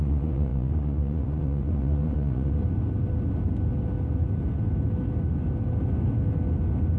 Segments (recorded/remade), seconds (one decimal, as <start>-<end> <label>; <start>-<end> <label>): 0.0-2.6 remade; 2.6-7.0 recorded